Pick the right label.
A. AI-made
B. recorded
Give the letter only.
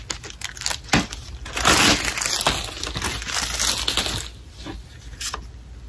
B